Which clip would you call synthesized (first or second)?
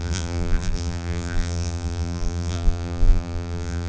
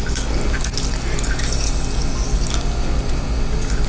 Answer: first